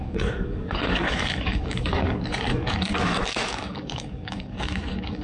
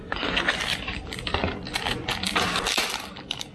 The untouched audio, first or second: second